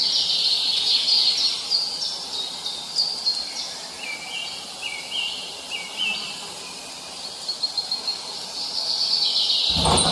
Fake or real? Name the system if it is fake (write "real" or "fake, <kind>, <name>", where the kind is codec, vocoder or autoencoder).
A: real